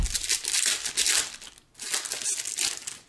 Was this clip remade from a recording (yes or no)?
no